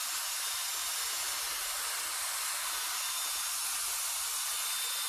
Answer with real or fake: real